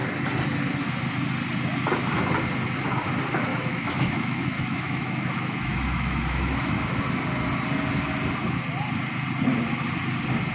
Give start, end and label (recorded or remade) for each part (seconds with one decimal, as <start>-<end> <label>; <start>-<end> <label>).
0.0-3.5 recorded; 3.5-7.0 remade; 7.0-10.5 recorded